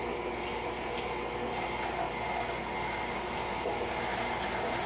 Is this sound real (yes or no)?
yes